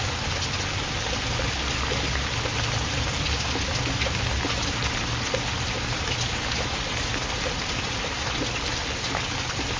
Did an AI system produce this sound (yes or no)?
no